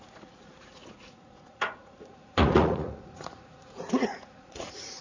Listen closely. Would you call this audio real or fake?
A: fake